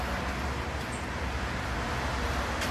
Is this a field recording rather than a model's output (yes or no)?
yes